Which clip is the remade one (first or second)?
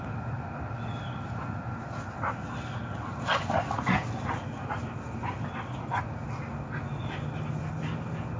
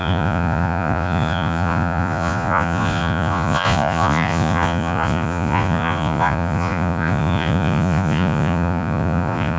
second